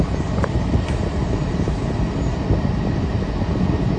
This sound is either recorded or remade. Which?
recorded